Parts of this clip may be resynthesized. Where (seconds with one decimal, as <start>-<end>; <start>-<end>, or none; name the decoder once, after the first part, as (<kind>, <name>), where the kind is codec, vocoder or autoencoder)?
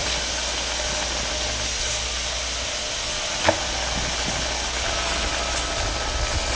none